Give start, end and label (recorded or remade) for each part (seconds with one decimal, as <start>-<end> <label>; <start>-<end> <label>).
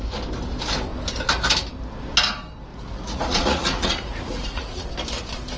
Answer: 0.0-2.7 recorded; 2.7-4.9 remade; 4.9-5.6 recorded